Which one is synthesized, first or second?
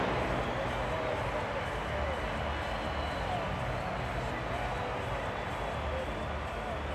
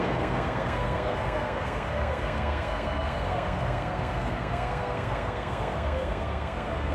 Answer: second